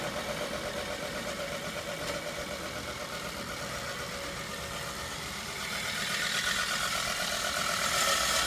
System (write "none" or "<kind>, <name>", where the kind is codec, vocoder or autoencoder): none